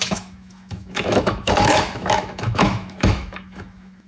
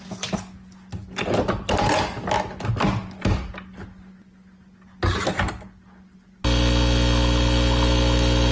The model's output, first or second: first